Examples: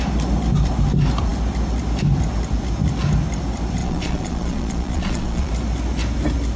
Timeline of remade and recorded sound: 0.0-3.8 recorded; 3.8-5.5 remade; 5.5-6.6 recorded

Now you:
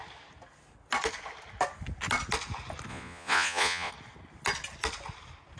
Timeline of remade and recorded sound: 0.0-2.9 recorded; 2.9-3.9 remade; 3.9-5.6 recorded

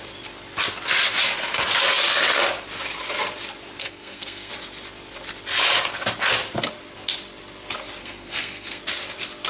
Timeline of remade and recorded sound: 0.0-3.8 recorded; 3.8-4.5 remade; 4.5-8.0 recorded; 8.0-8.8 remade; 8.8-9.5 recorded

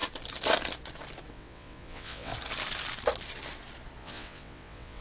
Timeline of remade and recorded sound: 0.0-1.3 recorded; 1.3-2.3 remade; 2.3-4.0 recorded; 4.0-5.0 remade

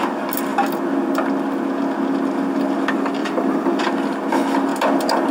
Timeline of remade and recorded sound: 0.0-3.2 recorded; 3.2-3.8 remade; 3.8-5.3 recorded